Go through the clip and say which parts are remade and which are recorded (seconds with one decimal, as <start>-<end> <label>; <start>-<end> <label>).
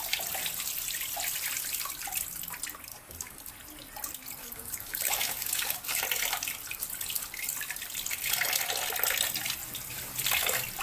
0.0-2.9 recorded; 2.9-3.5 remade; 3.5-4.4 recorded; 4.4-6.0 remade; 6.0-10.8 recorded